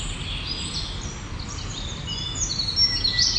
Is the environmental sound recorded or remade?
recorded